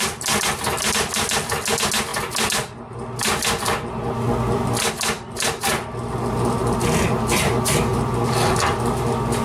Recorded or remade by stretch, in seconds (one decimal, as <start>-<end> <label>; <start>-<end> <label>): 0.0-9.4 recorded